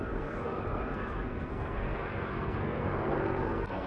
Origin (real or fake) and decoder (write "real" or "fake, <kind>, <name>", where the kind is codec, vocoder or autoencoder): fake, codec, SNAC